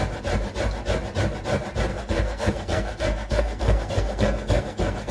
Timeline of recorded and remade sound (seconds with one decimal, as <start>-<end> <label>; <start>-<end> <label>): 0.0-1.9 recorded; 1.9-5.1 remade

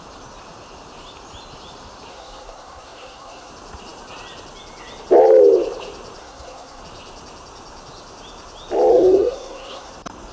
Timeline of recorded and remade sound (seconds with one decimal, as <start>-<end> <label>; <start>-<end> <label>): 0.0-2.1 recorded; 2.1-3.5 remade; 3.5-6.2 recorded; 6.2-6.8 remade; 6.8-8.9 recorded; 8.9-9.9 remade; 9.9-10.3 recorded

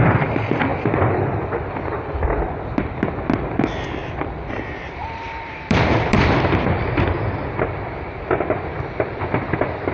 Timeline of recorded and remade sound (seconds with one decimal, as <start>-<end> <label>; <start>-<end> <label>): 0.0-4.0 recorded; 4.0-8.4 remade; 8.4-9.9 recorded

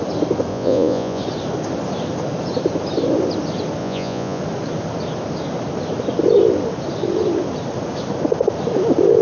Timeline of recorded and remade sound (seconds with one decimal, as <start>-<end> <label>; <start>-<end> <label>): 0.0-0.5 recorded; 0.5-1.2 remade; 1.2-3.8 recorded; 3.8-4.4 remade; 4.4-9.2 recorded

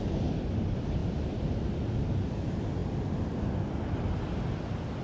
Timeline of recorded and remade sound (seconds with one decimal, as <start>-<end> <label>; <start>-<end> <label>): 0.0-5.0 recorded

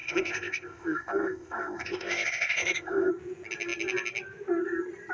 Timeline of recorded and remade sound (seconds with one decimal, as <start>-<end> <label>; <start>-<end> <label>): 0.0-3.1 remade; 3.1-5.1 recorded